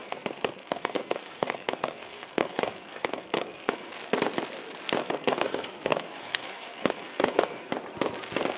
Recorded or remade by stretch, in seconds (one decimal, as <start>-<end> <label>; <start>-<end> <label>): 0.0-3.9 remade; 3.9-5.0 recorded; 5.0-7.7 remade; 7.7-8.6 recorded